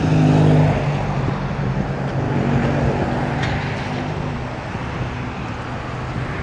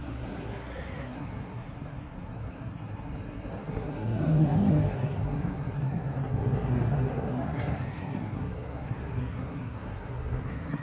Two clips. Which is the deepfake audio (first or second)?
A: second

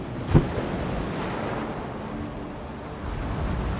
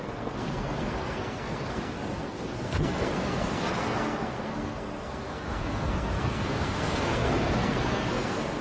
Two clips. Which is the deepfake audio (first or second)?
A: second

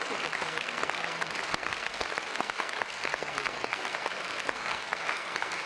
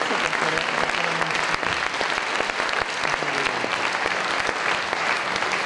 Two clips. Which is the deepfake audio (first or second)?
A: first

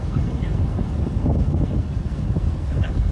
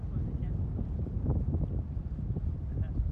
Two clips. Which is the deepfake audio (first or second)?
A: first